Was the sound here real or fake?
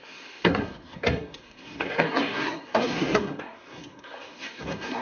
fake